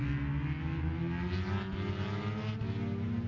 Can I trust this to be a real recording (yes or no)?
yes